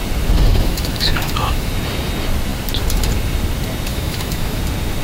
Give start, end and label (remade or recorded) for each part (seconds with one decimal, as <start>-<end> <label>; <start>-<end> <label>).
0.0-0.5 recorded; 0.5-1.7 remade; 1.7-3.9 recorded; 3.9-4.6 remade; 4.6-5.0 recorded